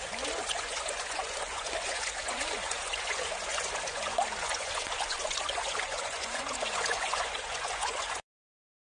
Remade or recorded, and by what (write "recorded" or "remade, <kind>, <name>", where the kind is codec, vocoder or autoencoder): remade, vocoder, Vocos